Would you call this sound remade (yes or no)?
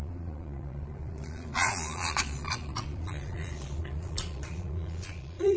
yes